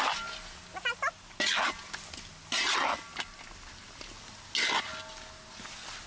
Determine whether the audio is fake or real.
real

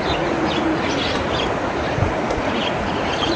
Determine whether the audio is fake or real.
fake